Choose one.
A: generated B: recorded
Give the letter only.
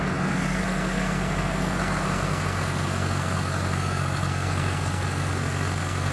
A